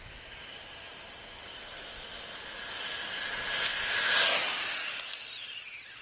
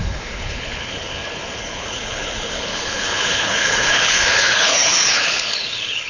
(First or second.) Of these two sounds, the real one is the first